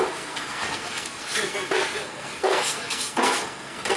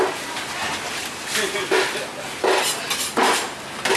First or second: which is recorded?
second